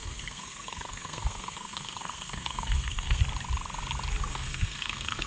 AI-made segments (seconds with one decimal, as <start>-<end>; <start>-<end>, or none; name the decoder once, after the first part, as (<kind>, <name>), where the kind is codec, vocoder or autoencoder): 0.0-3.2 (codec, SNAC); 4.3-5.3